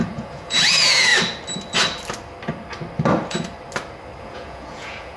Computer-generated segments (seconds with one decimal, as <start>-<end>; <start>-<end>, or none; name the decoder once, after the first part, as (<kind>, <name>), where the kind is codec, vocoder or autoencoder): 0.0-1.1 (vocoder, Vocos); 4.2-5.2